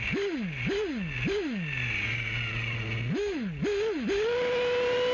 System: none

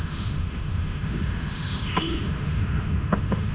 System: autoencoder, DAC-VAE